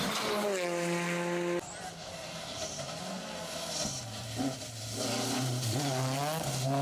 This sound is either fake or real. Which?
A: real